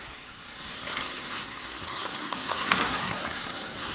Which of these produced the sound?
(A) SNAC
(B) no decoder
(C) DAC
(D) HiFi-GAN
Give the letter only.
A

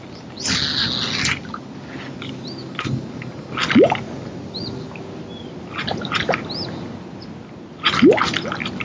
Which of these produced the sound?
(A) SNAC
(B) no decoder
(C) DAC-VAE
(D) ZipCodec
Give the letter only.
B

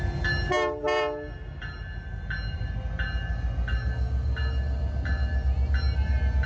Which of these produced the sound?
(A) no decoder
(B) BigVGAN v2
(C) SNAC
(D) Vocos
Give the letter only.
A